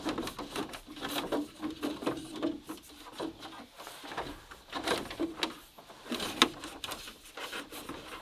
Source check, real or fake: real